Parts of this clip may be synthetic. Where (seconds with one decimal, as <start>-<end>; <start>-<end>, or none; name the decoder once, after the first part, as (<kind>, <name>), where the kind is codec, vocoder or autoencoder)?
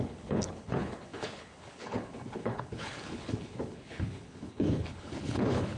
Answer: 0.0-5.8 (codec, HILCodec)